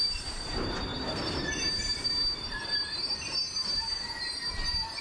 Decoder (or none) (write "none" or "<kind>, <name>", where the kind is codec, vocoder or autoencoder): vocoder, BigVGAN v2